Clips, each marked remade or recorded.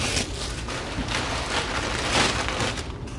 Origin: recorded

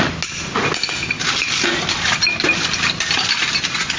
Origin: recorded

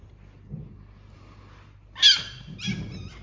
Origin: recorded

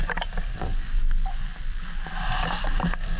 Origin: recorded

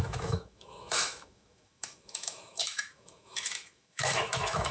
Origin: remade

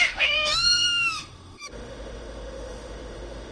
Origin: remade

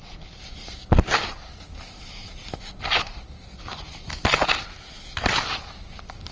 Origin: recorded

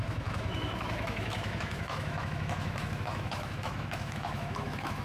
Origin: remade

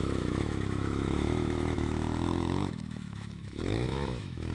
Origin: remade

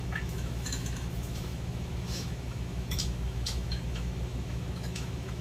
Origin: remade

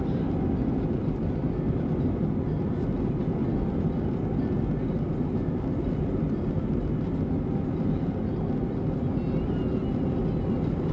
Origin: recorded